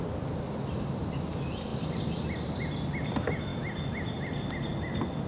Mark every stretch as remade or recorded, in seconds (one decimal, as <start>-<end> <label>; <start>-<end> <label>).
0.0-3.5 recorded; 3.5-4.1 remade; 4.1-5.3 recorded